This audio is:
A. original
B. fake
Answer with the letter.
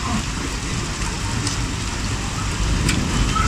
A